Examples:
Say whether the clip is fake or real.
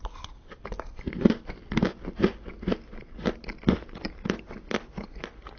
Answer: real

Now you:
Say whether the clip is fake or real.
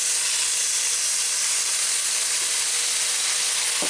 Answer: real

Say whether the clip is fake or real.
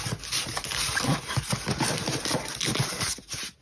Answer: real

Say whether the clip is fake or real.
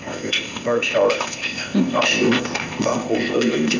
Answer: fake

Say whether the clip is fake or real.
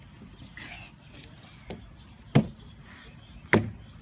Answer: real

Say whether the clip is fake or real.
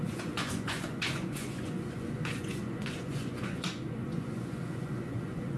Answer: fake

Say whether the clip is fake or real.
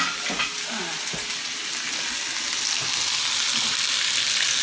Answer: real